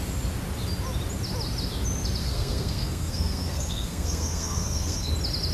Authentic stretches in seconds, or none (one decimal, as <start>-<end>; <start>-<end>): 0.0-2.2; 5.1-5.5